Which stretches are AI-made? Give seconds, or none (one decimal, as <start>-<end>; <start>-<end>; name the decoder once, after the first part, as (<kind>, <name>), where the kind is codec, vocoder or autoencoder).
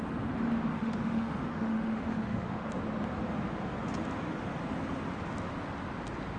0.7-2.7 (autoencoder, DAC-VAE)